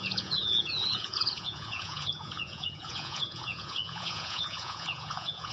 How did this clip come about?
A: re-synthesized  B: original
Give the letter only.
A